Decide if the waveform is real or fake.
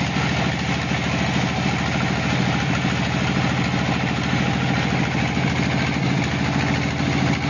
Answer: real